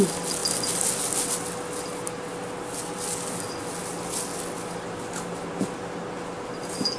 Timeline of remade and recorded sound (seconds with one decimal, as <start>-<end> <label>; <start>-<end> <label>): 0.0-7.0 recorded

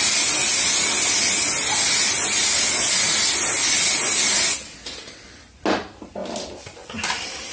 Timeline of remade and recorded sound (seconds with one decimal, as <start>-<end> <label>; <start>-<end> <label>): 0.0-7.5 recorded

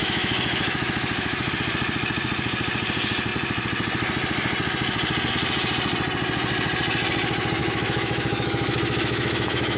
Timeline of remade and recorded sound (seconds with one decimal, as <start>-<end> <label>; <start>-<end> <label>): 0.0-1.5 remade; 1.5-7.6 recorded; 7.6-9.8 remade

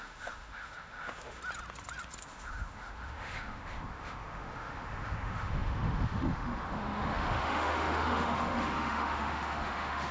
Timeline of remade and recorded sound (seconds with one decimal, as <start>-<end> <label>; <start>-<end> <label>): 0.0-1.4 remade; 1.4-2.2 recorded; 2.2-10.1 remade